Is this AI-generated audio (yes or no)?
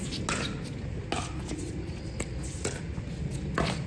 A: no